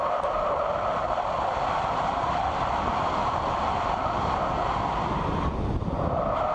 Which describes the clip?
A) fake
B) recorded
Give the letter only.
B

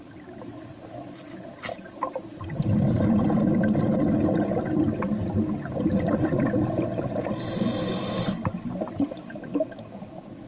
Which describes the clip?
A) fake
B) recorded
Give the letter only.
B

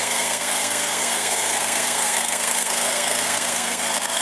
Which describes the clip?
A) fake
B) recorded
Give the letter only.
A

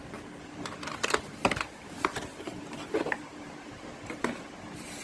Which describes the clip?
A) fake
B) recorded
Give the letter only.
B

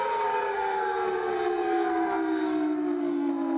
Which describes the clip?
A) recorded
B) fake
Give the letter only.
B